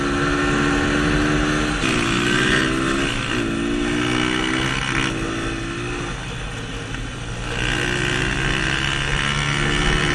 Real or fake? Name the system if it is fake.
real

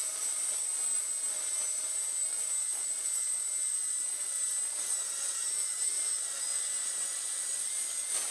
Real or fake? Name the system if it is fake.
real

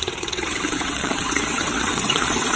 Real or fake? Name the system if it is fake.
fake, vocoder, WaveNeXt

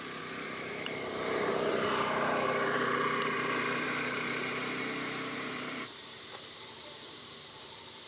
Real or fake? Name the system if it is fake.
fake, vocoder, BigVGAN v2